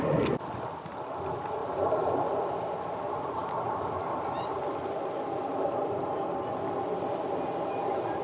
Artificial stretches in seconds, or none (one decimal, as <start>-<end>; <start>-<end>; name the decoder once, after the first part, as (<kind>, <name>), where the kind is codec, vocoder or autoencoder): 1.6-4.6 (vocoder, BigVGAN v2)